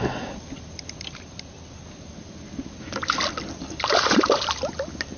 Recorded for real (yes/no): yes